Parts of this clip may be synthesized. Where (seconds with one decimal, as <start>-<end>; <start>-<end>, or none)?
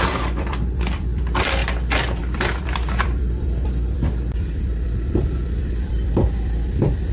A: 0.0-1.6; 2.2-7.1